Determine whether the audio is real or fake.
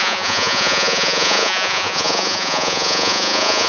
fake